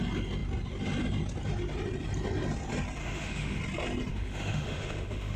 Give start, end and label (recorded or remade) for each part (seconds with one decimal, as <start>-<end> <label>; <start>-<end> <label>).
0.0-3.0 recorded; 3.0-3.6 remade; 3.6-4.1 recorded; 4.1-5.4 remade